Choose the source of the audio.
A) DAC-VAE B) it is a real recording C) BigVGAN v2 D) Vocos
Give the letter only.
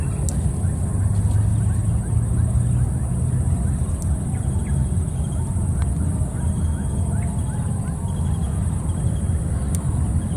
B